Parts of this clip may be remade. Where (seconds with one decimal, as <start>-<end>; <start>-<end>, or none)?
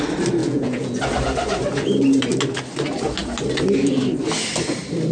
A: 0.4-1.0